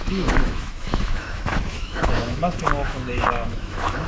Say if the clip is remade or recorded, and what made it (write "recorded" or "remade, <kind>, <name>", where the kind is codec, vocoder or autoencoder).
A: remade, autoencoder, DAC-VAE